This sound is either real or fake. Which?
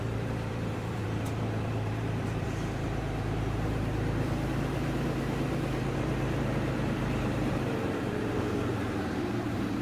fake